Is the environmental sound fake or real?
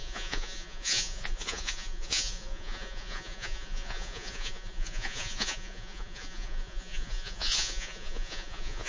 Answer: fake